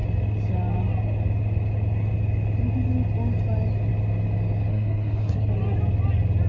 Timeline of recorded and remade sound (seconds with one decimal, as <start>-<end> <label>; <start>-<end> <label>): 0.0-4.7 recorded; 4.7-5.5 remade; 5.5-6.5 recorded